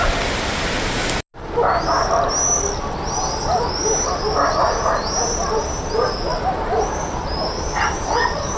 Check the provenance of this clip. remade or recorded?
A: recorded